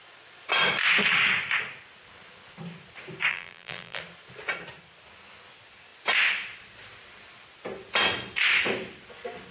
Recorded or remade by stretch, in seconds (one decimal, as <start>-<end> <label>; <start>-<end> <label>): 0.0-3.3 recorded; 3.3-4.0 remade; 4.0-9.5 recorded